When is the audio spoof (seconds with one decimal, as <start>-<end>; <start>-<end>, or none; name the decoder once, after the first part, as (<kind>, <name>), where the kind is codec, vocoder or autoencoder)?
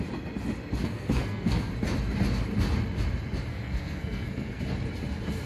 0.8-1.7 (codec, SNAC); 3.5-4.6